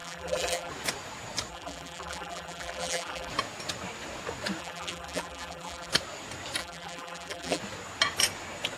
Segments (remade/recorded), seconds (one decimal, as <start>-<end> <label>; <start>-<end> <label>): 0.0-0.7 remade; 0.7-1.5 recorded; 1.5-3.3 remade; 3.3-4.6 recorded; 4.6-5.9 remade; 5.9-6.6 recorded; 6.6-7.6 remade; 7.6-8.8 recorded